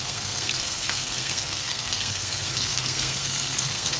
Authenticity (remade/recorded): remade